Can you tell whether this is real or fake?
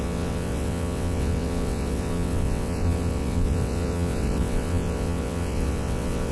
fake